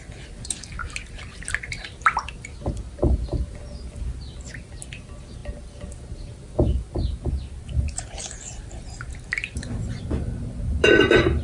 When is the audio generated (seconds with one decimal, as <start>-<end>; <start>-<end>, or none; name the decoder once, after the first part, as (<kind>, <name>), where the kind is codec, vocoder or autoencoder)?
none